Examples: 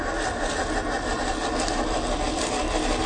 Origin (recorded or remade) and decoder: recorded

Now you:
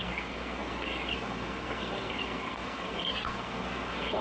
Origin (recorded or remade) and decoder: remade, codec, SNAC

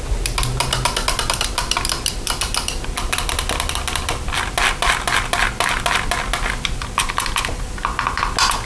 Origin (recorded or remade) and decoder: recorded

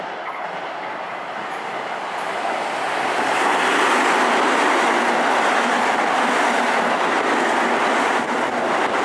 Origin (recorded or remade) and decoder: recorded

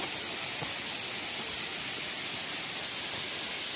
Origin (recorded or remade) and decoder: recorded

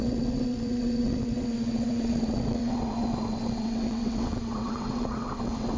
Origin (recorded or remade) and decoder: remade, vocoder, WaveNeXt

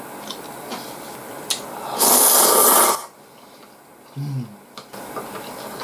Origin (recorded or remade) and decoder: recorded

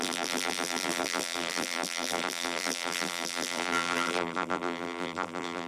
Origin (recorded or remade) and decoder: remade, vocoder, BigVGAN v2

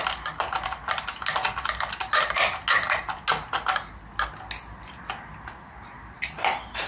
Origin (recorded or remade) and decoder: recorded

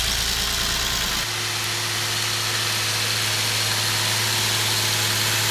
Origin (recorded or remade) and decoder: recorded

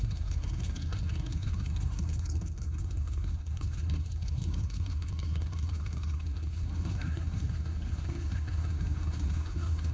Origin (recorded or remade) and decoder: remade, codec, SNAC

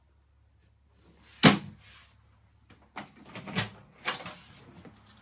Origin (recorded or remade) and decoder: recorded